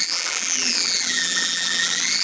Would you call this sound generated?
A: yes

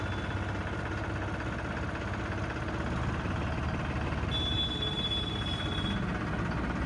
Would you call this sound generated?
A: no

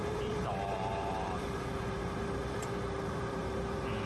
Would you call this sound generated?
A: yes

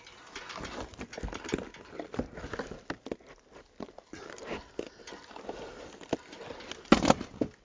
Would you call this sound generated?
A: no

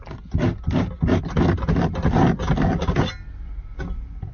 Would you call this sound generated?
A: no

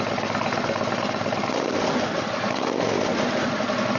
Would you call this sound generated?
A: no